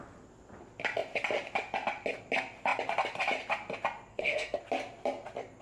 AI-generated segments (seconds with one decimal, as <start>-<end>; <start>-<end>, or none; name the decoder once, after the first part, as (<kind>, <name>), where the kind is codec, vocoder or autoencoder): 4.1-4.6 (codec, SNAC)

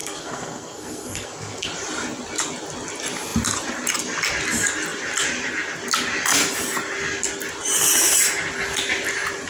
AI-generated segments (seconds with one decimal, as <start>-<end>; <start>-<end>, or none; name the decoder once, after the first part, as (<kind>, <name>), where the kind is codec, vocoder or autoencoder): 0.0-1.7 (codec, SNAC)

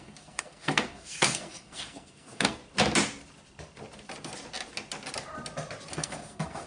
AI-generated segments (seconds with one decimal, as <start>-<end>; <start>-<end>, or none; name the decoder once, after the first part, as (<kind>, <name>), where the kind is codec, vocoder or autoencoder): 0.0-2.6 (codec, SNAC); 5.9-6.7

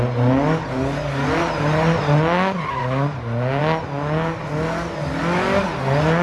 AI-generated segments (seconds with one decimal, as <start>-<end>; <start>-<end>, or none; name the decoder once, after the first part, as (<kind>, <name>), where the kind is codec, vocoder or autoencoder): none